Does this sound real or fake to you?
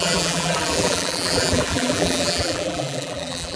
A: fake